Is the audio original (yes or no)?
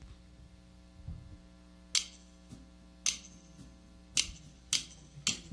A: yes